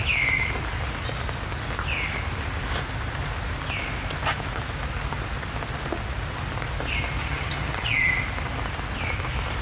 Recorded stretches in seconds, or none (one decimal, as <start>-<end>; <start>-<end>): 0.0-7.2; 8.1-9.6